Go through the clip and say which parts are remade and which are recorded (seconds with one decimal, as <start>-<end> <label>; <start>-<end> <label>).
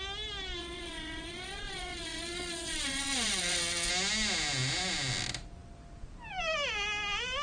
0.0-0.6 recorded; 0.6-3.9 remade; 3.9-7.4 recorded